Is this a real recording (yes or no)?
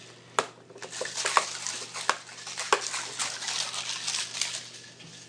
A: yes